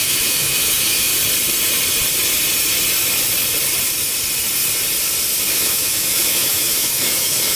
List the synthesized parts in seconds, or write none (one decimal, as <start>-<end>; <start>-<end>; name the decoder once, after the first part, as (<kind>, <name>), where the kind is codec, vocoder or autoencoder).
0.0-1.1 (autoencoder, DAC-VAE); 5.5-7.6